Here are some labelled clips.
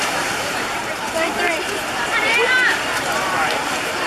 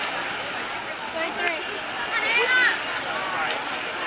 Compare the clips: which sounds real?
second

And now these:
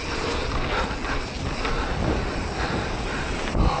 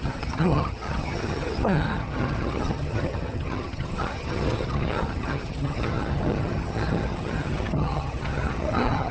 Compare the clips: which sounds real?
first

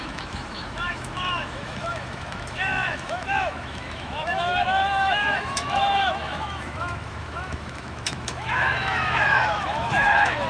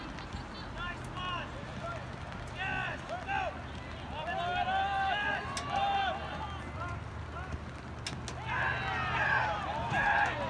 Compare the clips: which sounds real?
second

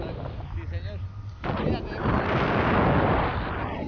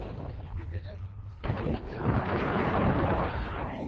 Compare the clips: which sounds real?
first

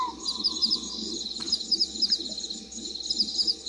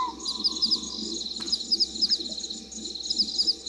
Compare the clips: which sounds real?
second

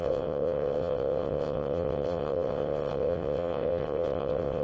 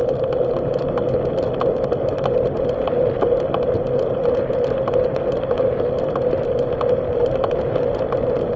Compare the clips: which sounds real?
second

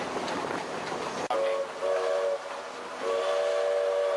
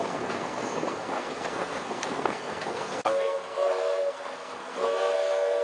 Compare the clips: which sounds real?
first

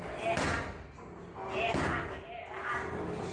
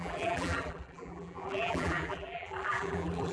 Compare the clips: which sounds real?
first